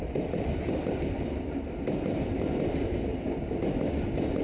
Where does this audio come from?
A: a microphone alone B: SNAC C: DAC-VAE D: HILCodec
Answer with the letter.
A